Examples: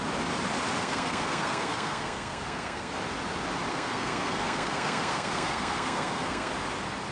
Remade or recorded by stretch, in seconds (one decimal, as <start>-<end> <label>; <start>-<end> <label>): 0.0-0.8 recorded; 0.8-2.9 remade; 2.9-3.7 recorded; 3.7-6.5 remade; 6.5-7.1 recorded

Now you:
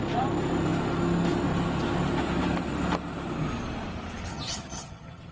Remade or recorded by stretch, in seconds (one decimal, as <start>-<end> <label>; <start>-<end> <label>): 0.0-4.3 recorded; 4.3-5.3 remade

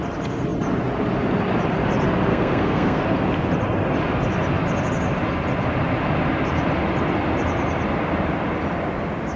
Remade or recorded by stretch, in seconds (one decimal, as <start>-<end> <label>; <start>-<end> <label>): 0.0-2.3 recorded; 2.3-3.0 remade; 3.0-9.4 recorded

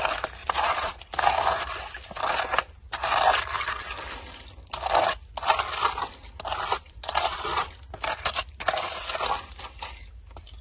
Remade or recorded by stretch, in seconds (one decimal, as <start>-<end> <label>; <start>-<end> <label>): 0.0-0.4 recorded; 0.4-1.0 remade; 1.0-6.7 recorded; 6.7-7.7 remade; 7.7-10.6 recorded